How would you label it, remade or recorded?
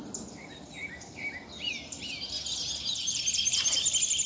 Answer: recorded